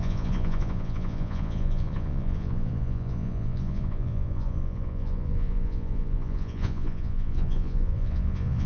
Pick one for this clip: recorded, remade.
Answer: remade